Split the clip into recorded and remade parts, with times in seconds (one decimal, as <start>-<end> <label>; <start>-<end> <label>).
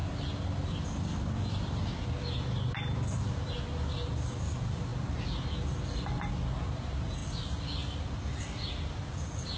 0.0-9.6 recorded